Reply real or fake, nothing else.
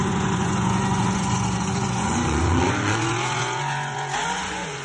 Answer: fake